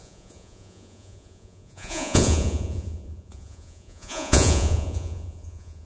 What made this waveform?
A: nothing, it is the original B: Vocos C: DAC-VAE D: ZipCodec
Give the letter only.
B